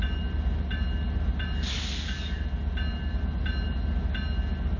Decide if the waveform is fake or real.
real